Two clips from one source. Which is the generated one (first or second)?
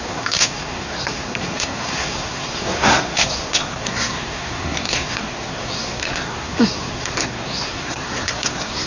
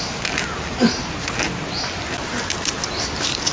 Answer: first